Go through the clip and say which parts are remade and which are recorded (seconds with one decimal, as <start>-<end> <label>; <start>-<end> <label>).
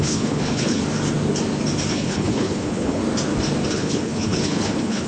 0.0-0.8 remade; 0.8-1.9 recorded; 1.9-3.0 remade; 3.0-3.7 recorded; 3.7-5.1 remade